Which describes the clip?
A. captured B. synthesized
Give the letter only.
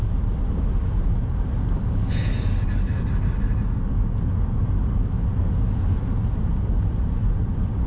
A